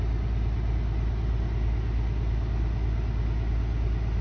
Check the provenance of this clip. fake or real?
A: real